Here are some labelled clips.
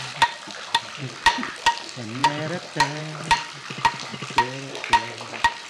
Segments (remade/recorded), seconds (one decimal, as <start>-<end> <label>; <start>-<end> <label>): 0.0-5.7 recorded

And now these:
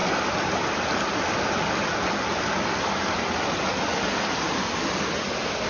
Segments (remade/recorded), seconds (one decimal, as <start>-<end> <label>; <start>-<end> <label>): 0.0-5.7 recorded

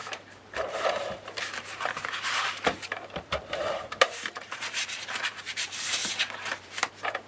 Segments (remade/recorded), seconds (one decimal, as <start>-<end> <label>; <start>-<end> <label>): 0.0-6.0 remade; 6.0-6.6 recorded; 6.6-7.3 remade

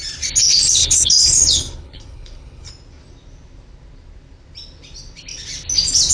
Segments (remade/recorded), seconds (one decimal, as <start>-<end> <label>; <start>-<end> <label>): 0.0-0.8 recorded; 0.8-2.7 remade; 2.7-6.1 recorded

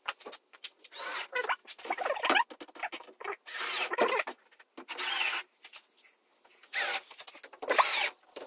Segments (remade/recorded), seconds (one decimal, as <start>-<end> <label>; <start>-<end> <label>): 0.0-8.5 recorded

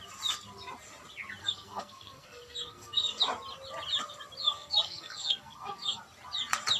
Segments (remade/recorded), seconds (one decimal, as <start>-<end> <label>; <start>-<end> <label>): 0.0-1.4 recorded; 1.4-3.2 remade; 3.2-4.4 recorded; 4.4-6.0 remade; 6.0-6.8 recorded

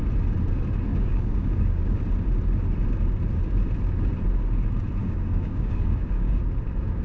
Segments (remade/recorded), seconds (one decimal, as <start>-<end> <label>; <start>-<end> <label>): 0.0-0.9 recorded; 0.9-2.0 remade; 2.0-5.0 recorded; 5.0-6.4 remade; 6.4-7.0 recorded

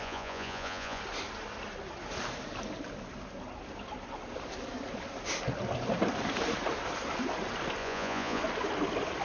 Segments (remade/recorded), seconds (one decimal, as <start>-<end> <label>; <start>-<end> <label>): 0.0-1.0 remade; 1.0-7.8 recorded; 7.8-8.4 remade; 8.4-9.2 recorded